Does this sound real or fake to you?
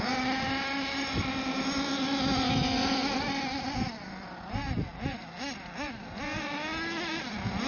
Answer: real